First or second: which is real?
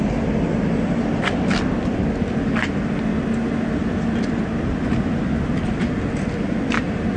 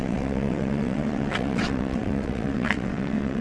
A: first